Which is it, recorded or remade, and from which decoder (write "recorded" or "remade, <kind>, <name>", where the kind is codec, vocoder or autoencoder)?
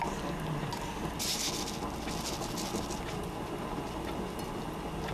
recorded